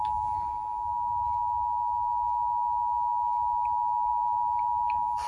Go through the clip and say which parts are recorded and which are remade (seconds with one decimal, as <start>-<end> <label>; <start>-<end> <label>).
0.0-5.3 recorded